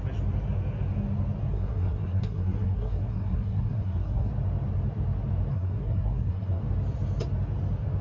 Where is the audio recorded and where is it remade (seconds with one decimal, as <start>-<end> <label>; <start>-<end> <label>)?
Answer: 0.0-1.5 recorded; 1.5-4.3 remade; 4.3-5.5 recorded; 5.5-6.6 remade; 6.6-8.0 recorded